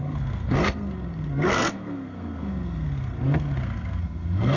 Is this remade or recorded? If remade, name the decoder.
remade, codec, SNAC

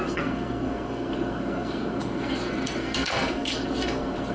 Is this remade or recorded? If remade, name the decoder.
remade, codec, SNAC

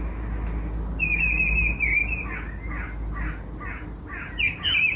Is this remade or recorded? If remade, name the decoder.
recorded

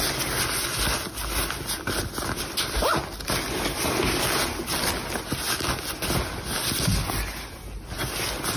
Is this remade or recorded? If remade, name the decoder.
recorded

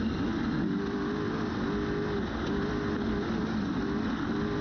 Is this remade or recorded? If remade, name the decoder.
recorded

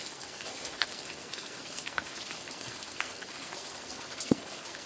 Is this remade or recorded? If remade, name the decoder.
remade, codec, SNAC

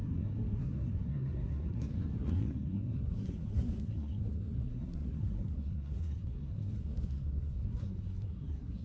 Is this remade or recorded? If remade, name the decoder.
remade, codec, SNAC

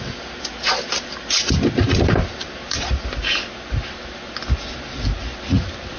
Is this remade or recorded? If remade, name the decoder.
recorded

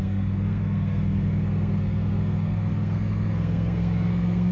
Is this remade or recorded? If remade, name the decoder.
remade, codec, SNAC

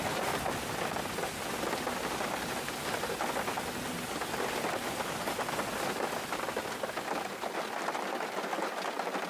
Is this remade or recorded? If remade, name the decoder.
recorded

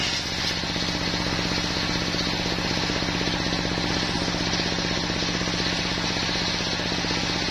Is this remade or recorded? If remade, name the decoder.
recorded